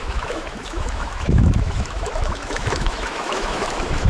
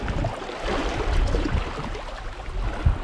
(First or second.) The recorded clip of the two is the second